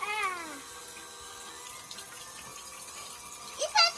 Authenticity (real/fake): real